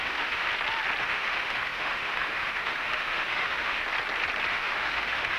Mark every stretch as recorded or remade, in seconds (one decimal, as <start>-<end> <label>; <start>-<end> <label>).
0.0-0.5 remade; 0.5-1.0 recorded; 1.0-3.8 remade; 3.8-4.5 recorded; 4.5-5.4 remade